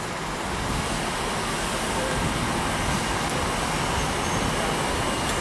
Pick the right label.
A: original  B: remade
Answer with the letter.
A